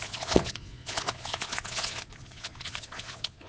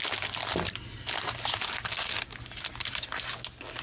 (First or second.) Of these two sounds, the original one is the second